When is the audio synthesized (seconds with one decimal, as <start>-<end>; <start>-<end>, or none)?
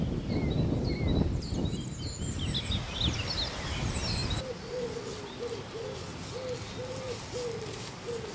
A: none